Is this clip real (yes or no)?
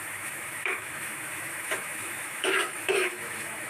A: no